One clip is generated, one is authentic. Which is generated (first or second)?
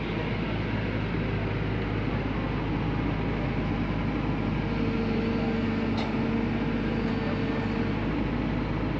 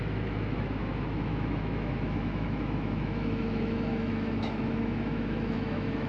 second